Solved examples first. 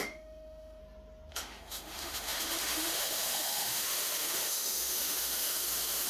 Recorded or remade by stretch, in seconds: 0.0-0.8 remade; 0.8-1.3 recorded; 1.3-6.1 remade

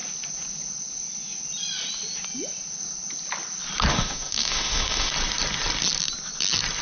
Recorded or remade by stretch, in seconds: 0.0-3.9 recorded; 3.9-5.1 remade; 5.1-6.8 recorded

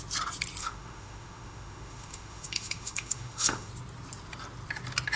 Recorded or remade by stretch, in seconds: 0.0-0.6 recorded; 0.6-3.7 remade; 3.7-5.2 recorded